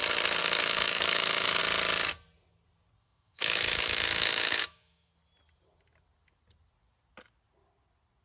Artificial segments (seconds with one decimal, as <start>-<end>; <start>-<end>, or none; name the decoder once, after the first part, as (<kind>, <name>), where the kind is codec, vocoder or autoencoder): 0.4-1.6 (autoencoder, DAC-VAE); 3.0-5.1

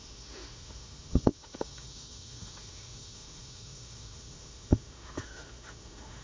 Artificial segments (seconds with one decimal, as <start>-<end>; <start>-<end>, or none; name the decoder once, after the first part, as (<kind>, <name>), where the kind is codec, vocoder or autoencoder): 0.0-6.2 (autoencoder, DAC-VAE)

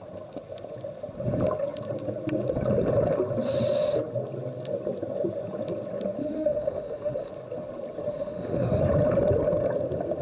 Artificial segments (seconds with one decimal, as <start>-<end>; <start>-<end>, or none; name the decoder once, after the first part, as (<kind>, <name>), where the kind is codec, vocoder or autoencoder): 6.2-7.3 (autoencoder, DAC-VAE); 8.1-8.8